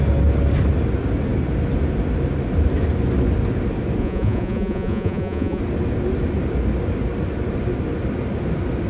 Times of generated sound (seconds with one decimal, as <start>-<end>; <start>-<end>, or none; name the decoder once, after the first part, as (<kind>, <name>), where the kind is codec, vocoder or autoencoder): 4.0-5.6 (vocoder, Vocos)